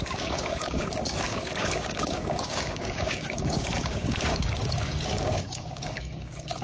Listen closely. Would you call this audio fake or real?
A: fake